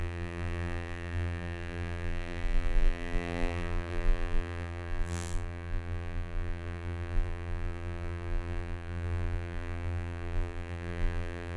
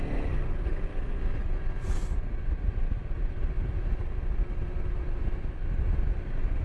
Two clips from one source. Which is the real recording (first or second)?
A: second